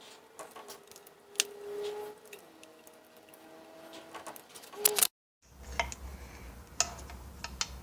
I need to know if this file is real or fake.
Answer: real